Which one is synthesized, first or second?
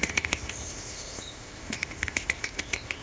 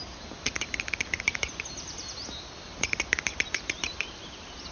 first